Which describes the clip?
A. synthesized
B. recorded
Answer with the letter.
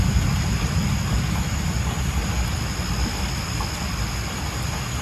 B